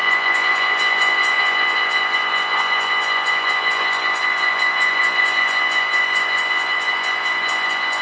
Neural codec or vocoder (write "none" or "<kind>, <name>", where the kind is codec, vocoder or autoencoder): vocoder, Vocos